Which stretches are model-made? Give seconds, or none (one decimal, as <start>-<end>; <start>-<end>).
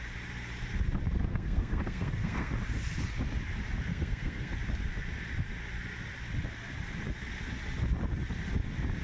1.3-2.5; 3.9-4.5